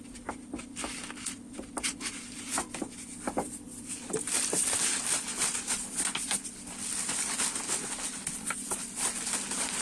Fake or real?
real